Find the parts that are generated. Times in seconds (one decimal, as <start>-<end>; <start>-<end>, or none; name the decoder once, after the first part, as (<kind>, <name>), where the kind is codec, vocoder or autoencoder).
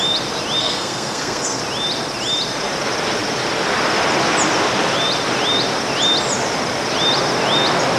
0.6-1.6 (codec, SNAC)